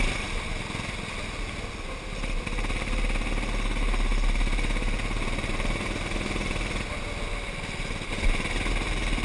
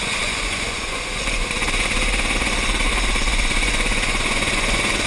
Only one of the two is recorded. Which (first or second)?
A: first